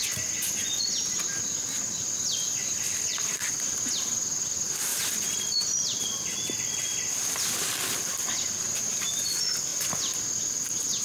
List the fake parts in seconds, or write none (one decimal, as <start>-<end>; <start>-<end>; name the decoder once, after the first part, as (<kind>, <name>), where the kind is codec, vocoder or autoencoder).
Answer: 2.3-3.5 (vocoder, BigVGAN v2); 4.9-8.4